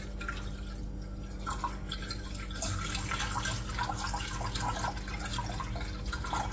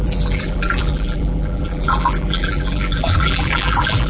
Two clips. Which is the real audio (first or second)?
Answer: first